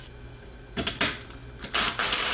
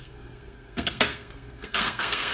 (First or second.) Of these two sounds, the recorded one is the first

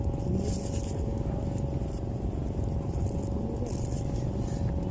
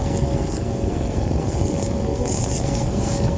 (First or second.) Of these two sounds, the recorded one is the first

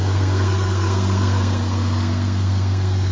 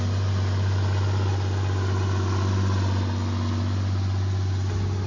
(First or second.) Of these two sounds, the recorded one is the second